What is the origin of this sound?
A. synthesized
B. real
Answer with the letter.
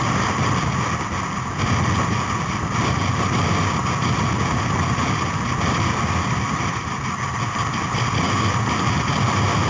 B